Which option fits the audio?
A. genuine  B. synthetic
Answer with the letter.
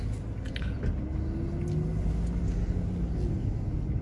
A